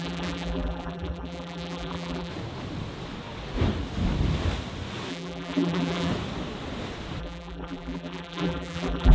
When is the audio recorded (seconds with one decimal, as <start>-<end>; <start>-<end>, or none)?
2.3-5.1; 6.1-7.2